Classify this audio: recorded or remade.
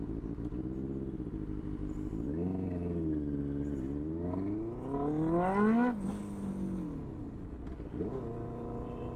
recorded